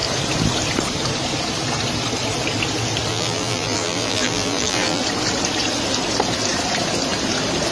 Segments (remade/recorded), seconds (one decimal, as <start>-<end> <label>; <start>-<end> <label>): 0.0-3.1 recorded; 3.1-5.0 remade; 5.0-7.7 recorded